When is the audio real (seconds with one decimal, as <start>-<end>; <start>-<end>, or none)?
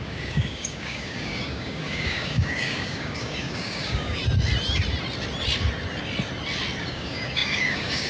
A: 4.2-6.8